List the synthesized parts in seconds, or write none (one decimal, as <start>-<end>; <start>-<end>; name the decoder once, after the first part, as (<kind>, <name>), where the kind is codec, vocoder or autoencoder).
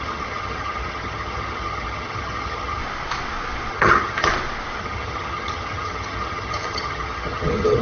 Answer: 0.0-2.8 (vocoder, HiFi-GAN); 3.7-4.3; 4.8-7.8